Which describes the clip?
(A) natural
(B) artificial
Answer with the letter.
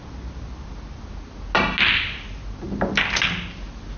A